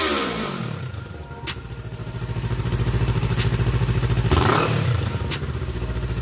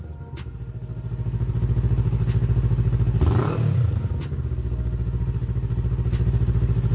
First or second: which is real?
second